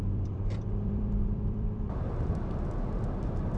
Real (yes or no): no